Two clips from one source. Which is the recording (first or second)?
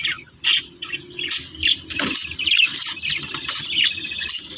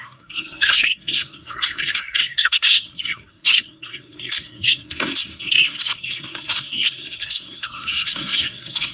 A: first